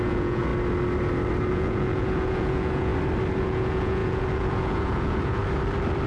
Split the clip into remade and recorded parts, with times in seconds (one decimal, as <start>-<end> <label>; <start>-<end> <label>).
0.0-0.5 remade; 0.5-1.5 recorded; 1.5-2.9 remade; 2.9-3.4 recorded; 3.4-5.4 remade; 5.4-6.1 recorded